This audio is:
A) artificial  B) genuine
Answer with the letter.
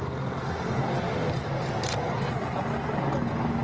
B